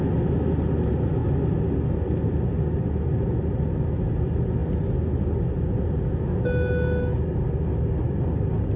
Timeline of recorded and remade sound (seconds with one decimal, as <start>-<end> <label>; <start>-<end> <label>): 0.0-8.8 recorded